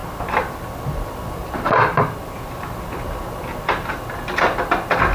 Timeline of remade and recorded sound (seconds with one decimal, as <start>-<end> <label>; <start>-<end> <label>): 0.0-0.6 remade; 0.6-1.4 recorded; 1.4-3.9 remade; 3.9-5.1 recorded